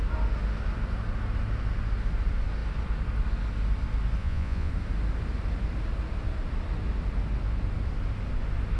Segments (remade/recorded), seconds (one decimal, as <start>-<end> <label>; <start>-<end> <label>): 0.0-4.2 recorded; 4.2-4.7 remade; 4.7-8.8 recorded